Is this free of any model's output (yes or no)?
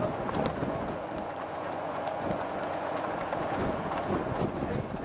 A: no